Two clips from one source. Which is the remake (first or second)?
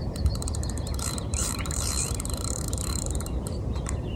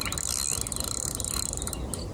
first